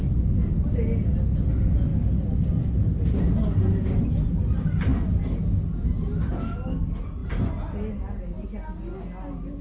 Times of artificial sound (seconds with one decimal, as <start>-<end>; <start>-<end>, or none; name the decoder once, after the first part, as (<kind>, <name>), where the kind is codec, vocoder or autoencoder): none